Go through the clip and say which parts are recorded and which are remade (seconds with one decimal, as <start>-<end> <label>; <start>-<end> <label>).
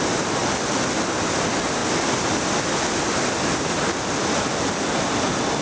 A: 0.0-5.6 recorded